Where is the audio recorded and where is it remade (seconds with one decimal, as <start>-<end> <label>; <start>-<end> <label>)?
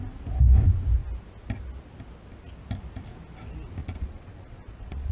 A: 0.0-3.8 recorded; 3.8-5.1 remade